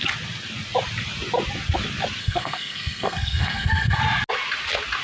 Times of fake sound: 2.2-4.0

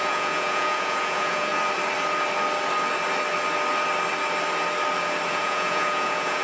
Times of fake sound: 0.0-1.5; 5.3-6.4

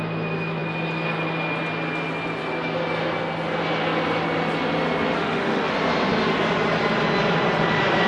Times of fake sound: 5.2-5.7

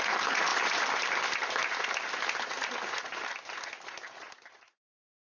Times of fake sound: none

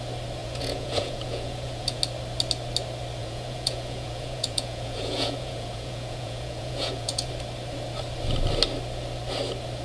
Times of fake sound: 0.4-2.0; 3.2-7.3

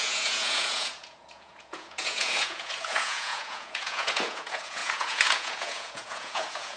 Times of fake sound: 0.0-6.8

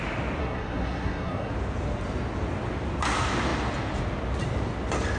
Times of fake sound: 0.4-1.5

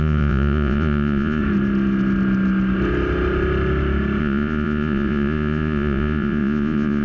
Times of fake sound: 0.0-1.4; 4.2-7.0